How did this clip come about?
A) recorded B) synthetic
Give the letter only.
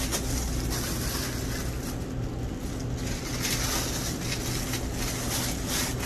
A